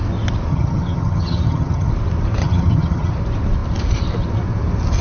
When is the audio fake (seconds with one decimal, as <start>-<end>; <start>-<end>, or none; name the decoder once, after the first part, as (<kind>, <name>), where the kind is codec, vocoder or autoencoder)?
0.5-1.9 (vocoder, HiFi-GAN); 2.4-3.1